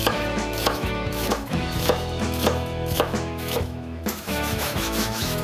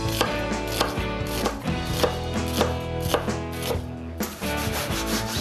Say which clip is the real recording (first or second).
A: second